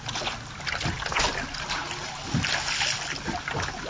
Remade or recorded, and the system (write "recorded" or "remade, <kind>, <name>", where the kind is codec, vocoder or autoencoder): recorded